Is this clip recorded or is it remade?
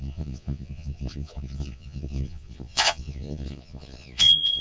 remade